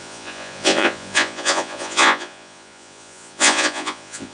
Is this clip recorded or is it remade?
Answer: remade